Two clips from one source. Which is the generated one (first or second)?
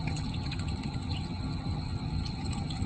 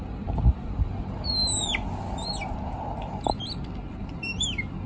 first